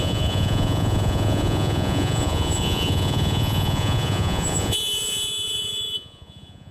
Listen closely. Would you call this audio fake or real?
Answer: fake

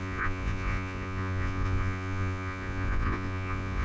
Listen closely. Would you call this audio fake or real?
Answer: fake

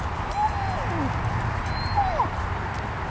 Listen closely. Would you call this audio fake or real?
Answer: real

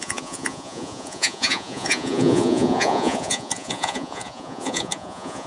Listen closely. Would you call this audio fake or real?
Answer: fake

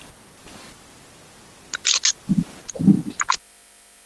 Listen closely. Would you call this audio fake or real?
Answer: real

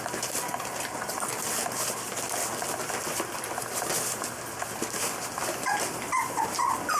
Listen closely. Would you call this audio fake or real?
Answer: real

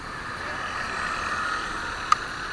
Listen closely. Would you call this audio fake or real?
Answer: real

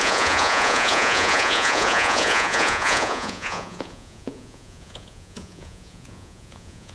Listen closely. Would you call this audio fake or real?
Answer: fake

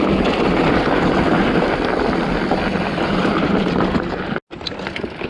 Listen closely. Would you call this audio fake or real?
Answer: real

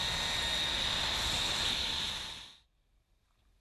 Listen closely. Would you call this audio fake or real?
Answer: real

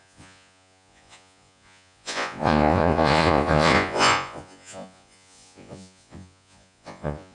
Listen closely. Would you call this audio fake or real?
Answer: fake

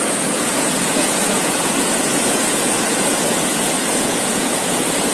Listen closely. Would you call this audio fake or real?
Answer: fake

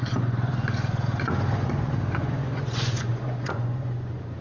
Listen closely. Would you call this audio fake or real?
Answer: fake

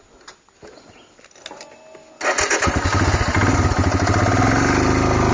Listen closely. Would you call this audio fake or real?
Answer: real